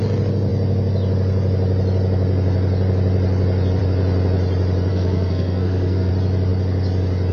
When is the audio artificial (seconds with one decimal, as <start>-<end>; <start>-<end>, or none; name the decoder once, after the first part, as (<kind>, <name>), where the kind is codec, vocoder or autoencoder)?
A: 4.9-6.1 (codec, SNAC)